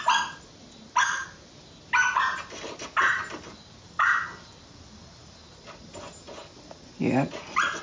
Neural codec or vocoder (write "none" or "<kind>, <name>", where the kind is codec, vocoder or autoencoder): none